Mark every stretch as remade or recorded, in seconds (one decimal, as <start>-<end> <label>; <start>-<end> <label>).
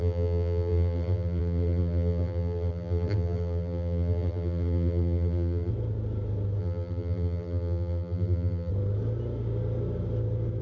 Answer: 0.0-5.7 remade; 5.7-6.6 recorded; 6.6-8.7 remade; 8.7-10.6 recorded